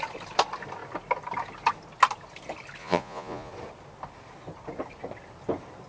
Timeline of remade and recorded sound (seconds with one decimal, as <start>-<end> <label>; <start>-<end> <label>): 0.0-2.8 recorded; 2.8-3.5 remade; 3.5-5.9 recorded